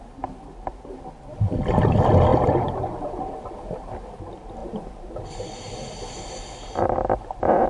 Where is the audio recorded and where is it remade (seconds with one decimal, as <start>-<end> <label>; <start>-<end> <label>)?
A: 0.0-2.3 recorded; 2.3-3.5 remade; 3.5-7.7 recorded